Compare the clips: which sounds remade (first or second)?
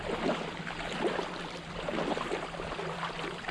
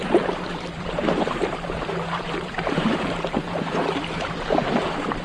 second